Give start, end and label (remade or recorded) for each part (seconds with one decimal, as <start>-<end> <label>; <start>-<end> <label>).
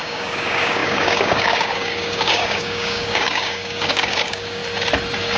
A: 0.0-4.6 remade; 4.6-5.4 recorded